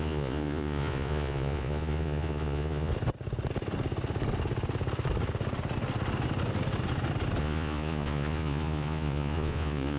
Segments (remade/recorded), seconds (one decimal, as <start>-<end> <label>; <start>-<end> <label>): 0.0-2.9 remade; 2.9-7.4 recorded; 7.4-10.0 remade